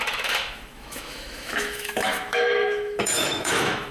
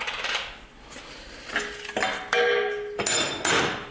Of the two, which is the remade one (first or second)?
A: first